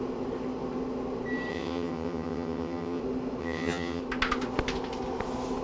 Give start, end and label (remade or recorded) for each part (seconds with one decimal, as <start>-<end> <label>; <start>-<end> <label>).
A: 0.0-1.5 recorded; 1.5-3.0 remade; 3.0-3.4 recorded; 3.4-4.0 remade; 4.0-5.6 recorded